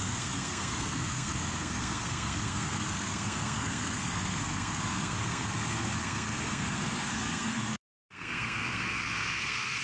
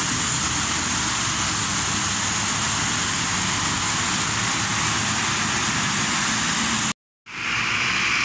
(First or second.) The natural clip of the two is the second